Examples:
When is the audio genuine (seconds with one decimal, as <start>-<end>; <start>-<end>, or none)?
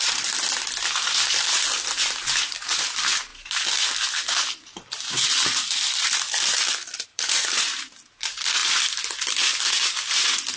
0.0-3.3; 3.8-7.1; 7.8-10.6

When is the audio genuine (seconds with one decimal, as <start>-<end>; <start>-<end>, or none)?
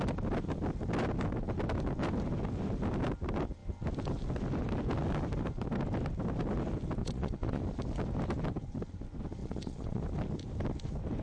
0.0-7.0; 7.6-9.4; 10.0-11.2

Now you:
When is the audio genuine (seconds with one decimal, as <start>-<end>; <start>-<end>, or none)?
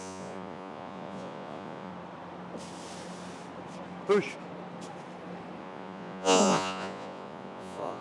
1.9-5.6